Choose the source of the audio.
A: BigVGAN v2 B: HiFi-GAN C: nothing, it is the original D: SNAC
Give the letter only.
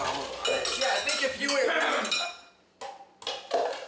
C